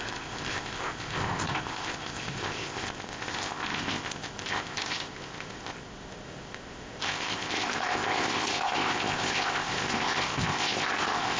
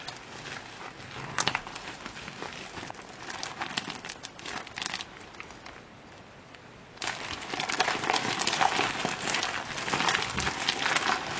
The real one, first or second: second